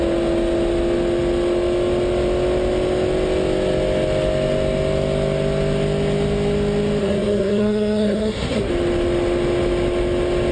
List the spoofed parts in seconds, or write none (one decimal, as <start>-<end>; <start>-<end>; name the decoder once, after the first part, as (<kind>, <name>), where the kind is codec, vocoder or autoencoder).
7.0-8.7 (codec, SNAC)